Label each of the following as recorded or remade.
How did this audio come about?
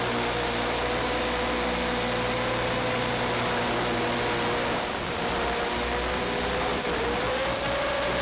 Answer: recorded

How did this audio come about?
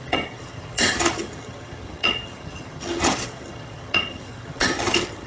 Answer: remade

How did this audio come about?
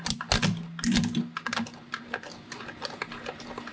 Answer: recorded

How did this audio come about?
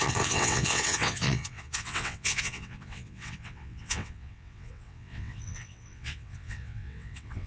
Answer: remade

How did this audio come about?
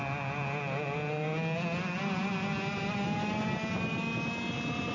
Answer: recorded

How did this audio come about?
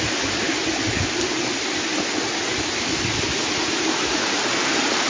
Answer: recorded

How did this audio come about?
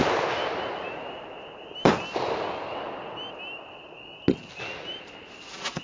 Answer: recorded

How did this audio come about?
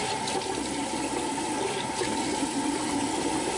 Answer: recorded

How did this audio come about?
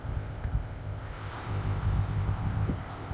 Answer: remade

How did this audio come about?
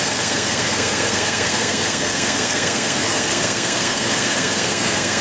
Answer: remade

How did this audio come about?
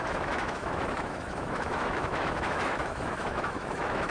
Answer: remade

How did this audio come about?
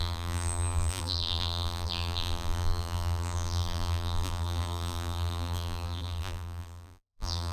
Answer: remade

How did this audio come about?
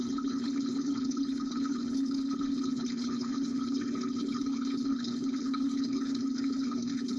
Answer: remade